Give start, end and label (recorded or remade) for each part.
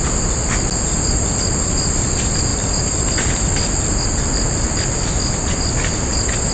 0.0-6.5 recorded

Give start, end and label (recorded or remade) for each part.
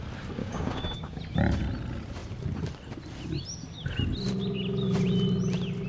0.0-0.4 recorded; 0.4-1.2 remade; 1.2-5.9 recorded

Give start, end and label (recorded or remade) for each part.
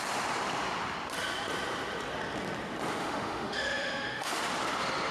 0.0-3.0 recorded; 3.0-4.4 remade; 4.4-5.1 recorded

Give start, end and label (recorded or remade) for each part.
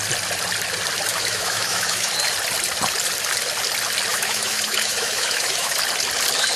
0.0-1.1 recorded; 1.1-2.1 remade; 2.1-4.1 recorded; 4.1-5.8 remade; 5.8-6.6 recorded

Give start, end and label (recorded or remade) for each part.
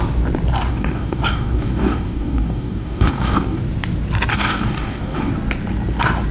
0.0-0.7 recorded; 0.7-3.6 remade; 3.6-4.3 recorded; 4.3-5.3 remade; 5.3-6.3 recorded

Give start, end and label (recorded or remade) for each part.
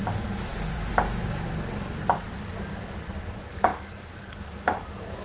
0.0-0.5 recorded; 0.5-2.8 remade; 2.8-3.7 recorded; 3.7-4.4 remade; 4.4-5.2 recorded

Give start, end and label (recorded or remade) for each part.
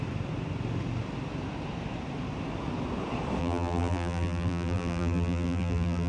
0.0-3.4 recorded; 3.4-6.1 remade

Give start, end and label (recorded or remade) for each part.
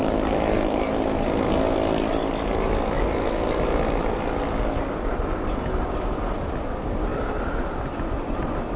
0.0-8.8 recorded